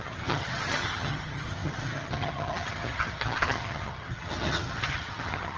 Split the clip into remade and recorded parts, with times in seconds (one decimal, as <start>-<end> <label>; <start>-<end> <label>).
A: 0.0-5.6 remade